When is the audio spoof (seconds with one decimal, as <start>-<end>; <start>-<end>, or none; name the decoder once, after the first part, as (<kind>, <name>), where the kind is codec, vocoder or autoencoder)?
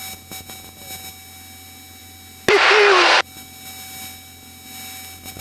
none